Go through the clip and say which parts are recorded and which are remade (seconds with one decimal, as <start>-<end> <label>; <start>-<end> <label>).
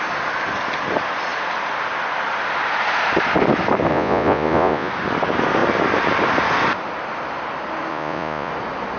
0.0-3.9 recorded; 3.9-4.9 remade; 4.9-7.9 recorded; 7.9-8.5 remade; 8.5-9.0 recorded